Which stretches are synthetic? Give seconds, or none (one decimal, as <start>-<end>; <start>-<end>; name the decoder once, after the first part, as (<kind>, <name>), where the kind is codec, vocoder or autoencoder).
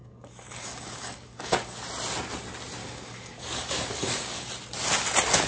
0.0-1.8 (codec, DAC); 2.8-4.5